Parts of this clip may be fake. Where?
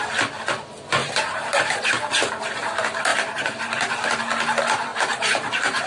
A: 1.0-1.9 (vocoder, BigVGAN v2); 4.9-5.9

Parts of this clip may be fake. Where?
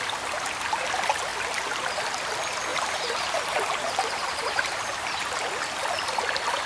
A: 2.7-4.9 (vocoder, BigVGAN v2)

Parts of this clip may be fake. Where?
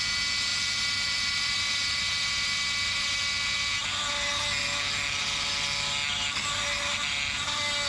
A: 0.5-2.0 (vocoder, BigVGAN v2); 3.8-4.3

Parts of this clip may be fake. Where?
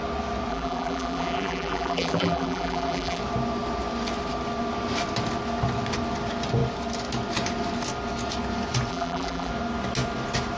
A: 0.5-3.2 (vocoder, BigVGAN v2); 8.9-9.5